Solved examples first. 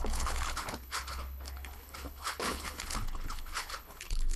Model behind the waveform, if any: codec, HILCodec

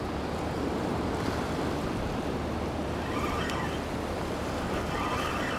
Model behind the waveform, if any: none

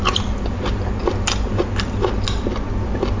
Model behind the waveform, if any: none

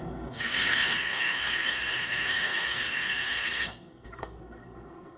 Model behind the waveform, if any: codec, SNAC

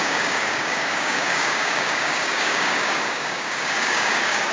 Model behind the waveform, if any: codec, DAC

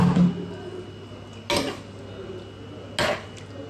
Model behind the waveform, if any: none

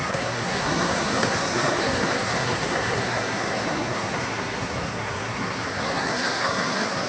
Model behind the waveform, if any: codec, SNAC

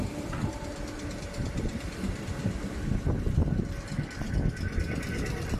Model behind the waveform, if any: none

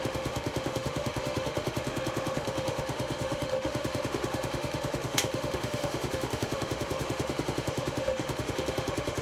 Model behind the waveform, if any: autoencoder, DAC-VAE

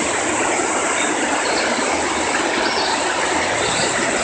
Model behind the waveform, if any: none